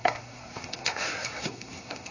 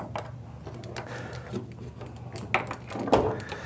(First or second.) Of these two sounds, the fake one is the first